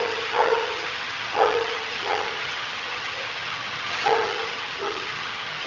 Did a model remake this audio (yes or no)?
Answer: yes